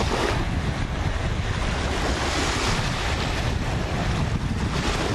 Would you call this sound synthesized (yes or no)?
no